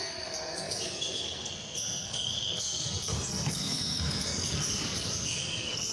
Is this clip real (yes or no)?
no